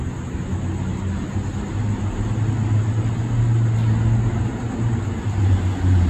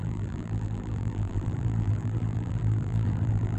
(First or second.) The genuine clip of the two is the first